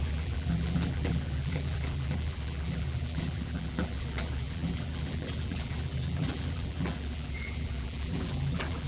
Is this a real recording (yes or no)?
no